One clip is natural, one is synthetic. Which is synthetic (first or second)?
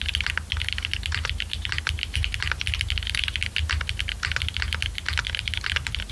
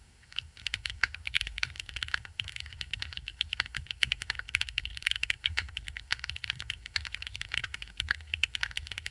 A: second